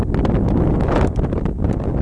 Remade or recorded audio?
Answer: recorded